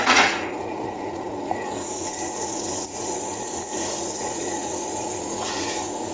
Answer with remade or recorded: remade